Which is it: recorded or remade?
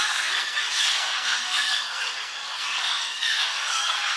remade